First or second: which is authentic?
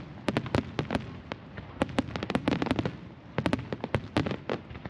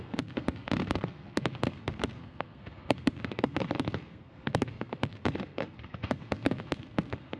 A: first